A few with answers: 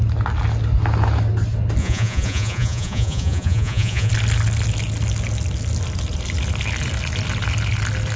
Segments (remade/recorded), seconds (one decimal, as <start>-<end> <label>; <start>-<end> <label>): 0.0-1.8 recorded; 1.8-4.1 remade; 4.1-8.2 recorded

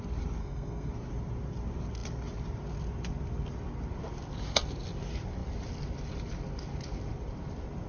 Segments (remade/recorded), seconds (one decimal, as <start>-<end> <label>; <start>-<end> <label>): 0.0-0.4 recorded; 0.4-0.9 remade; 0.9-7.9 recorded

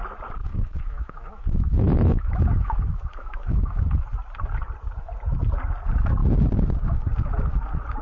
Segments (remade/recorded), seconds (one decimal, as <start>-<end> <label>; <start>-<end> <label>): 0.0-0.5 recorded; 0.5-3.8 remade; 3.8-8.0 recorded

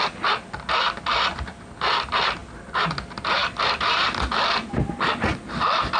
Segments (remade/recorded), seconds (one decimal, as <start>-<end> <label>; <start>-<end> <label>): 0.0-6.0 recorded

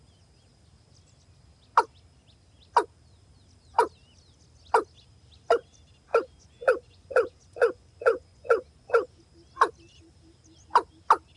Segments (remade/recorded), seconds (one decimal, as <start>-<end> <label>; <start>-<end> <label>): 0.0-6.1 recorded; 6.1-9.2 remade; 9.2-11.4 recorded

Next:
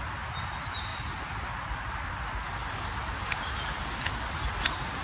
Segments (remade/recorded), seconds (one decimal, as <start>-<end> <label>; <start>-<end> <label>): 0.0-5.0 recorded

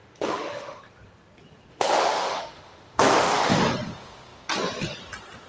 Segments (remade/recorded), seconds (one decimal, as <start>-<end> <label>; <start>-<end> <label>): 0.0-0.8 remade; 0.8-1.7 recorded; 1.7-3.6 remade; 3.6-5.5 recorded